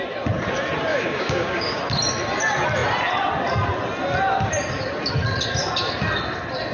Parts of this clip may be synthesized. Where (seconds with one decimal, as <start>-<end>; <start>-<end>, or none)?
0.9-1.8